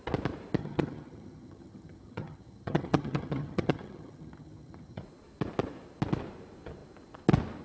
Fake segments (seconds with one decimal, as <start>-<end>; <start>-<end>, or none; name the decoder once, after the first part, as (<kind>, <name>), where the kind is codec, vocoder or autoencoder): 0.6-5.0 (vocoder, HiFi-GAN)